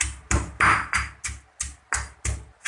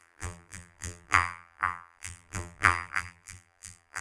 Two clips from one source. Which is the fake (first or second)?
second